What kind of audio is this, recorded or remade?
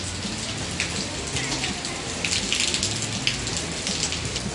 recorded